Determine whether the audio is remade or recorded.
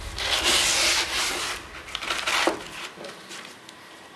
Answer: recorded